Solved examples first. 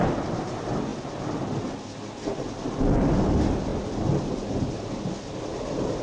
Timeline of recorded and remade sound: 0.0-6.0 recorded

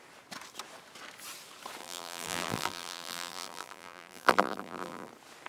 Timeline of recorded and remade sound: 0.0-1.8 recorded; 1.8-5.1 remade; 5.1-5.5 recorded